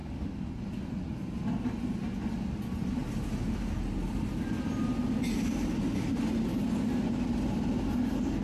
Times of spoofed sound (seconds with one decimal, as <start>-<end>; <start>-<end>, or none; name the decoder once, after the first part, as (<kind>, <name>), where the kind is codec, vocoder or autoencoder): none